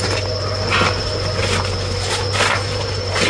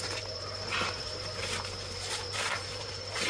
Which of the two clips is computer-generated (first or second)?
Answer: second